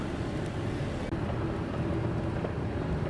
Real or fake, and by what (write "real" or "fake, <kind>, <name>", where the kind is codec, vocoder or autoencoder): real